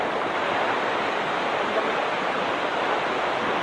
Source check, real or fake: real